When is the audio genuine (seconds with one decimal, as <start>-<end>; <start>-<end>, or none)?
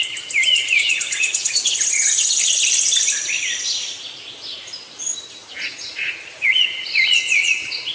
0.0-0.6; 2.3-5.4